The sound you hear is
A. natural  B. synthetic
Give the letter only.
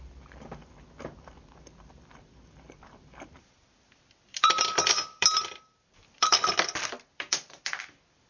B